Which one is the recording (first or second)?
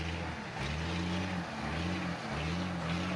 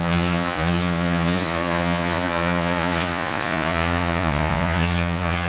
first